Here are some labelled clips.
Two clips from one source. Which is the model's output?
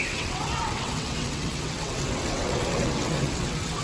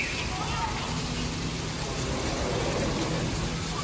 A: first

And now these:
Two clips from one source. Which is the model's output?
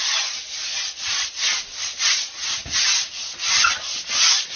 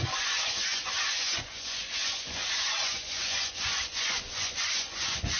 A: second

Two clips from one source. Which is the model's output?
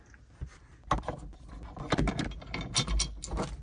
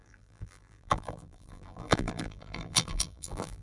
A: second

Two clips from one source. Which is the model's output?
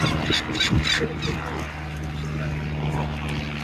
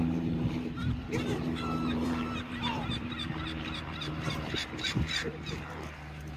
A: second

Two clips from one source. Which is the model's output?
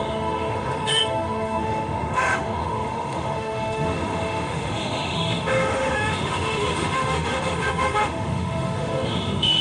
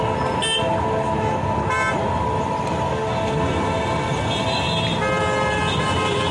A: first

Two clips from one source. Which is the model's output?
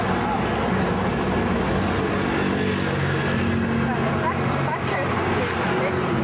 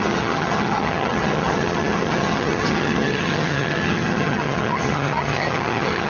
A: second